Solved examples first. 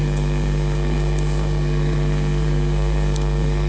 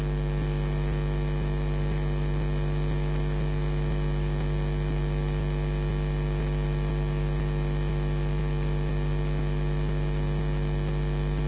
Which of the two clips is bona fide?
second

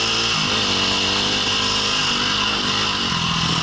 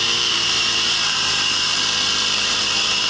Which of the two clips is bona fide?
first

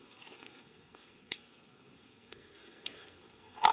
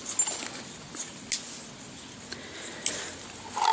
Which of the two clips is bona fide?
second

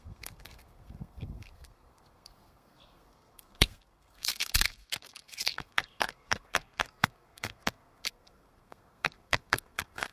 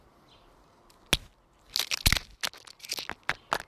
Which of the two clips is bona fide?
second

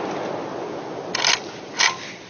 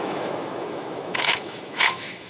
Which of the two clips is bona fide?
first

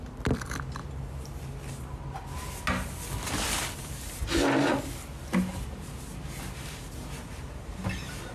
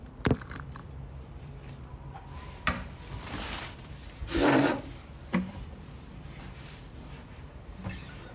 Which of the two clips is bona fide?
first